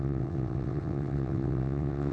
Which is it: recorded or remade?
remade